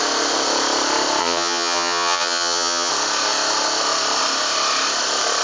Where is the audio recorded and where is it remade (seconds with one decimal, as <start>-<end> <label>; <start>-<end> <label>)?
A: 0.0-1.2 recorded; 1.2-2.9 remade; 2.9-5.4 recorded